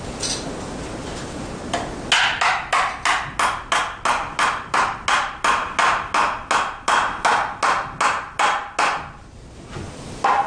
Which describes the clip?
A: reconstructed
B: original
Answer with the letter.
B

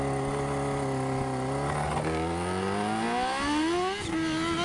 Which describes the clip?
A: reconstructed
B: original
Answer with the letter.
B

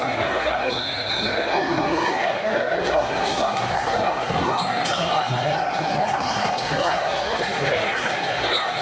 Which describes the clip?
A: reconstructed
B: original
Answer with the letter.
A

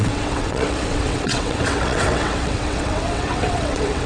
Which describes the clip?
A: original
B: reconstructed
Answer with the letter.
B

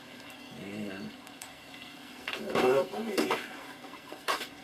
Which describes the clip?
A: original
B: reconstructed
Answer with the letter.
B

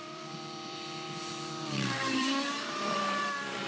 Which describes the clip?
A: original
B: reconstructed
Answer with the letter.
B